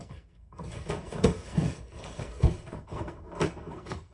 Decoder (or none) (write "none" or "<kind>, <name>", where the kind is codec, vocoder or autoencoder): codec, SNAC